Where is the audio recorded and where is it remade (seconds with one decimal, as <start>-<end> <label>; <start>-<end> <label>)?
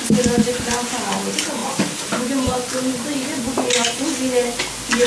0.0-5.1 recorded